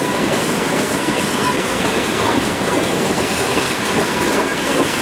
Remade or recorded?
remade